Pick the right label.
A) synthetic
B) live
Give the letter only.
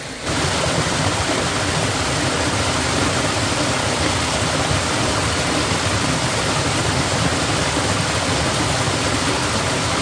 B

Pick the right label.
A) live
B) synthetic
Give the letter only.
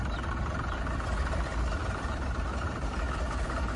A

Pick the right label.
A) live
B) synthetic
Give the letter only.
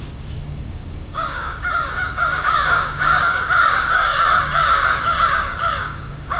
B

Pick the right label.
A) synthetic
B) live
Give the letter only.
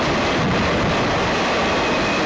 B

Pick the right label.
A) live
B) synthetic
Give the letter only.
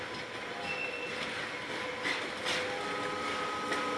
A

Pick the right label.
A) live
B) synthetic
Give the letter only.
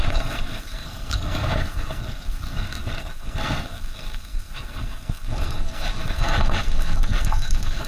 B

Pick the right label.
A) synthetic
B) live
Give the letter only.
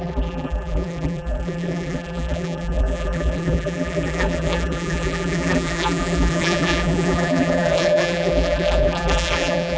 A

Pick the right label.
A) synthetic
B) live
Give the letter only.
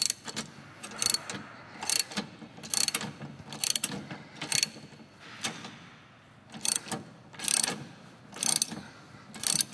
B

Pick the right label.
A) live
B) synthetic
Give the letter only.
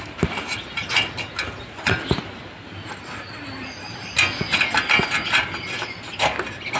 A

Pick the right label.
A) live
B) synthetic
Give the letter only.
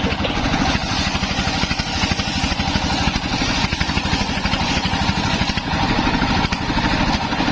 B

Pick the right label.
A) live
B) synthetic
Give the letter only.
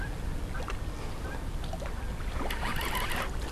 A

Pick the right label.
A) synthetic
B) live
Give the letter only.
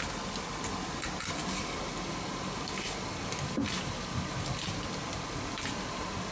B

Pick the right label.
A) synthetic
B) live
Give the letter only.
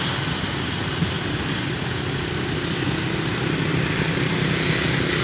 B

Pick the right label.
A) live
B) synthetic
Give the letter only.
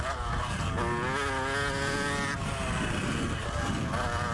A